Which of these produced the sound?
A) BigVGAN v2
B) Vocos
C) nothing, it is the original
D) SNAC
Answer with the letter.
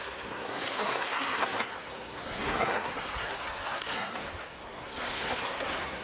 D